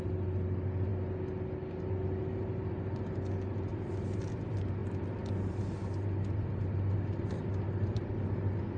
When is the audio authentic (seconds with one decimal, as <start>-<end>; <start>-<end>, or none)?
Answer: 0.0-3.7; 4.3-4.8; 5.6-8.8

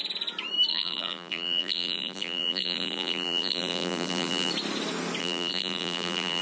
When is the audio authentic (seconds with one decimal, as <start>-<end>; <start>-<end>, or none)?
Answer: 0.0-0.7; 4.5-5.2

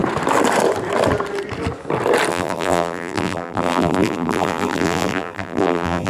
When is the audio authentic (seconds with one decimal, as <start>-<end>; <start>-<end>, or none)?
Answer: 0.0-2.3

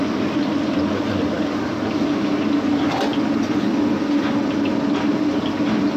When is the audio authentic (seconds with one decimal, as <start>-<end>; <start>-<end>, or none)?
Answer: 0.0-6.0